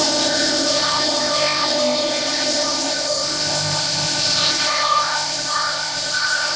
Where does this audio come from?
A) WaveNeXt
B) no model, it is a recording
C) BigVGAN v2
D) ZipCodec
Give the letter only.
D